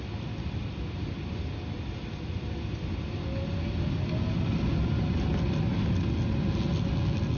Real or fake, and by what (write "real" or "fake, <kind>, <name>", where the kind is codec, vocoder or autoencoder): real